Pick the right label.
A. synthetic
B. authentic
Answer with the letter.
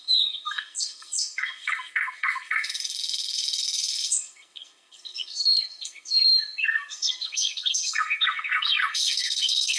A